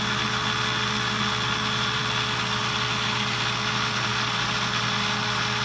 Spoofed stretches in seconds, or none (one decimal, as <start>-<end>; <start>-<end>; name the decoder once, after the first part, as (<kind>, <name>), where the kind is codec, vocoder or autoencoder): none